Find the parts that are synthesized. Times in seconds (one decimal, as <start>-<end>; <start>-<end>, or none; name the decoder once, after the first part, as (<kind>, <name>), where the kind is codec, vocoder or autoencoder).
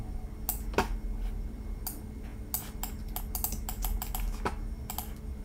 none